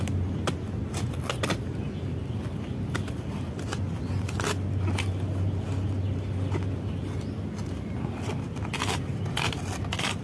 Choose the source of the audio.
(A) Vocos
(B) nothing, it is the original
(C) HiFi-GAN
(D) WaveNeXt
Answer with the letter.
B